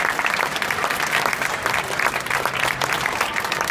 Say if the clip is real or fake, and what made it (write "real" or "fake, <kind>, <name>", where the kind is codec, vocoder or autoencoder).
fake, vocoder, BigVGAN v2